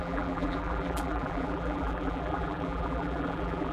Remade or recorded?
remade